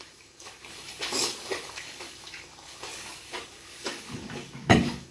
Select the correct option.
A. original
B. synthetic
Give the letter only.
B